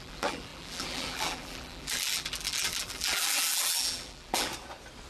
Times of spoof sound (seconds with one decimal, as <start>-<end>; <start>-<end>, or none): 0.0-4.5